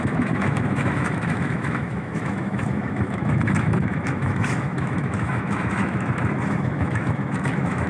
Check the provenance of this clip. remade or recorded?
remade